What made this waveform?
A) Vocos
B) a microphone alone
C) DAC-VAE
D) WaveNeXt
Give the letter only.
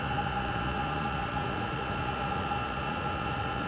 A